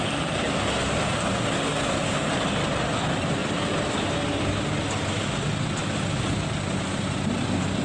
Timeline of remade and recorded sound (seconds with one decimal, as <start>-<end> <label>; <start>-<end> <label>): 0.0-7.8 recorded